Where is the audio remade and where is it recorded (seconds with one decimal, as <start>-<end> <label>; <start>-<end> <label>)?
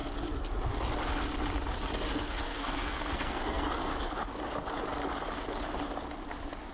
0.0-2.1 recorded; 2.1-3.9 remade; 3.9-6.7 recorded